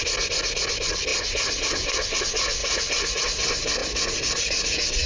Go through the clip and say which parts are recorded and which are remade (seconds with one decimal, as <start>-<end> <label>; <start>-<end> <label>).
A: 0.0-2.6 recorded; 2.6-3.2 remade; 3.2-3.8 recorded; 3.8-5.1 remade